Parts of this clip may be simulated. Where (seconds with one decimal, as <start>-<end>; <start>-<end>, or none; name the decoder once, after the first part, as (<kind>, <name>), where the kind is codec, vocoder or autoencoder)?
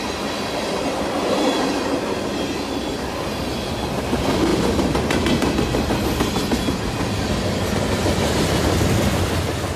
none